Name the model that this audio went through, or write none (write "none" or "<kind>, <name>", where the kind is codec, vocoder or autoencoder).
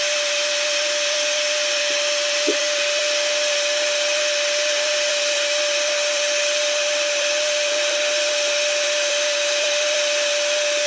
vocoder, BigVGAN v2